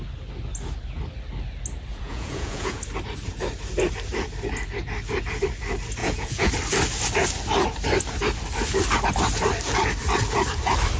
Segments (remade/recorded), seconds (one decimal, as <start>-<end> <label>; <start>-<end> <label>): 0.0-1.9 recorded; 1.9-2.8 remade; 2.8-6.0 recorded; 6.0-6.5 remade; 6.5-11.0 recorded